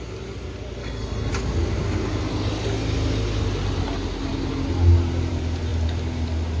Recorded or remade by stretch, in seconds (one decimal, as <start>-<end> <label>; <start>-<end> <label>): 0.0-0.8 recorded; 0.8-1.3 remade; 1.3-6.6 recorded